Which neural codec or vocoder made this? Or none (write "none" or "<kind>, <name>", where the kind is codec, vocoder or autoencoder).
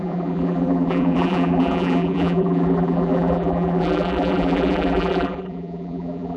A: vocoder, BigVGAN v2